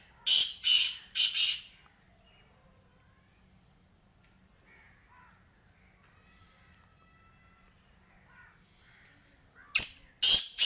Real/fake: real